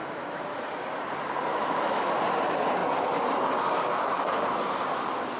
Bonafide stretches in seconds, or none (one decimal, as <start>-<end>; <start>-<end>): 0.6-1.5; 2.1-5.4